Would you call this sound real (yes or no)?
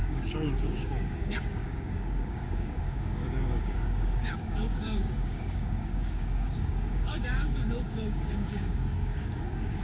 no